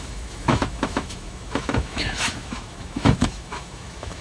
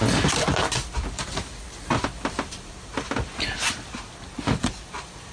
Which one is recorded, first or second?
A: second